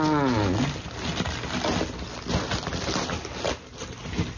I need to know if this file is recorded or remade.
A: recorded